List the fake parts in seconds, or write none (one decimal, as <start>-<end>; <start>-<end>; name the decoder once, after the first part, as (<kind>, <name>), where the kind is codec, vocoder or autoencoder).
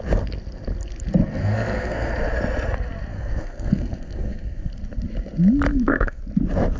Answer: 1.4-2.1 (codec, SNAC); 3.1-4.7; 5.7-6.2